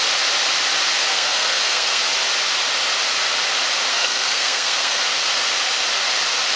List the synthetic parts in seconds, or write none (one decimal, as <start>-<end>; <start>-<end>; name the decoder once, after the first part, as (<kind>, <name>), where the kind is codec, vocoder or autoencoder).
1.1-2.0 (codec, SNAC); 3.9-5.0